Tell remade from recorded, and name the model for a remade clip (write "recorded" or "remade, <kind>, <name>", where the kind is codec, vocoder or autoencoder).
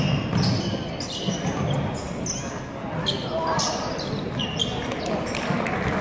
recorded